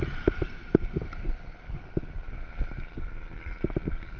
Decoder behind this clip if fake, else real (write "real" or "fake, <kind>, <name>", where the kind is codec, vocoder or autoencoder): real